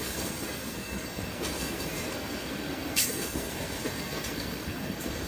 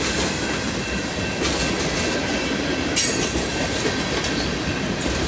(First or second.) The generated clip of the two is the first